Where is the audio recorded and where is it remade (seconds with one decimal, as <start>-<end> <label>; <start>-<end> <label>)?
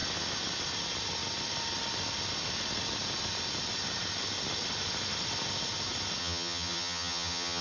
0.0-6.2 recorded; 6.2-7.6 remade